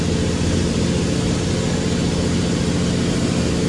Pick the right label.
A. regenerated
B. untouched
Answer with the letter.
B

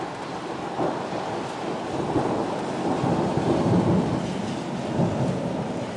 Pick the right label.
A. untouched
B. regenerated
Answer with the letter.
A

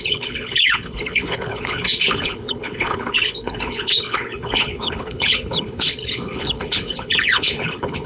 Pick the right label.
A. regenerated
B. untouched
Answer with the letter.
A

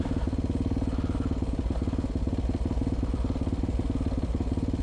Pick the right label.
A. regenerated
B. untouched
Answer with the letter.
B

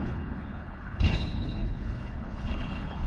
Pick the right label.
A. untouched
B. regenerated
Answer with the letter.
B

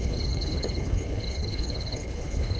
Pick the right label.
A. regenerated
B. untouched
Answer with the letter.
A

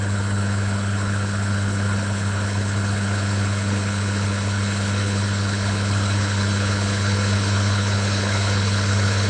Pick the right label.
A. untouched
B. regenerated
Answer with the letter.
B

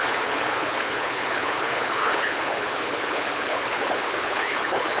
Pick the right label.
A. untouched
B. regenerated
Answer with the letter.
B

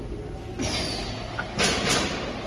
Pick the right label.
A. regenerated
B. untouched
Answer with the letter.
B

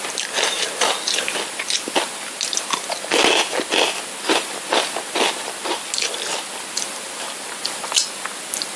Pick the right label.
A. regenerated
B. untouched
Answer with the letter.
B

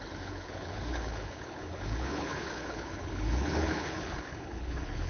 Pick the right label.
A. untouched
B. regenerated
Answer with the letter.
B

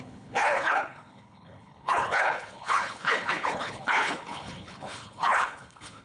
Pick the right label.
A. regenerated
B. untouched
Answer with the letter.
A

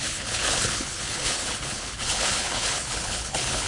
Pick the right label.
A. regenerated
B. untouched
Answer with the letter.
A